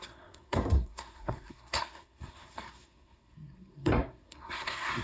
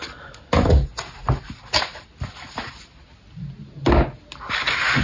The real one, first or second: second